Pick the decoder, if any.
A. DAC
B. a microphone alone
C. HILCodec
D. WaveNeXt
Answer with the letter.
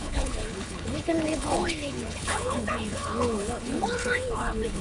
C